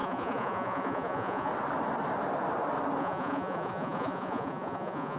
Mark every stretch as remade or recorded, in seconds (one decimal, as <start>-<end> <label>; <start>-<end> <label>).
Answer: 0.0-1.5 remade; 1.5-3.0 recorded; 3.0-5.2 remade